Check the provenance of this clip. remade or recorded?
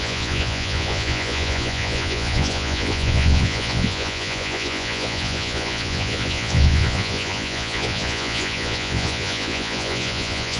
remade